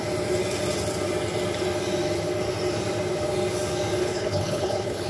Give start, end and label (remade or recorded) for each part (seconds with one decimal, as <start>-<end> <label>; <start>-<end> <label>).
0.0-4.0 recorded; 4.0-5.1 remade